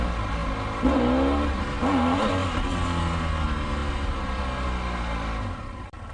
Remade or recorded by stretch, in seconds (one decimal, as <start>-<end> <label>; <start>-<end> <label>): 0.0-6.1 recorded